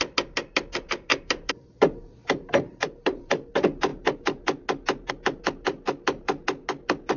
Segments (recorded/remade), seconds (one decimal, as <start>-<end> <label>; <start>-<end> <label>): 0.0-1.1 recorded; 1.1-3.3 remade; 3.3-7.2 recorded